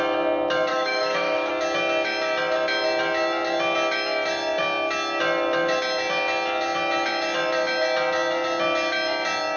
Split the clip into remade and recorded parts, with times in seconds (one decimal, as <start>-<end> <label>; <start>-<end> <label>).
0.0-0.7 recorded; 0.7-1.5 remade; 1.5-9.6 recorded